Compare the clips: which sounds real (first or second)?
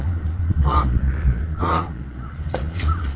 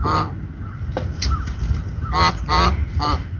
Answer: second